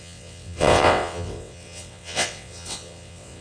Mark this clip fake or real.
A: fake